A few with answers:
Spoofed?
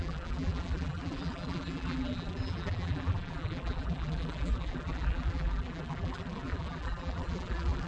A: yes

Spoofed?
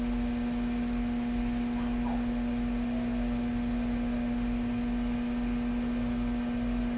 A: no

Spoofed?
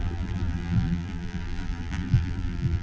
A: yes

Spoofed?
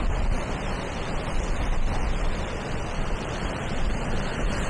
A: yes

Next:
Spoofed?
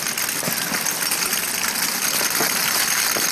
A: no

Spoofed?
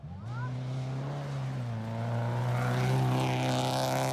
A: no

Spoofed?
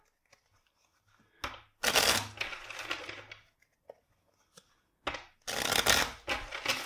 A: no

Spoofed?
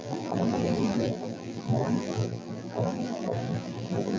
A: yes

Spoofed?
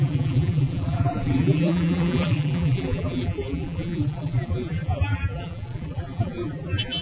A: yes